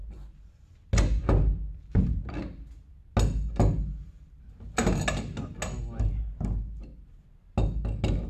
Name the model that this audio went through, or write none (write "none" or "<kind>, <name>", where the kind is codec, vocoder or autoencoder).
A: none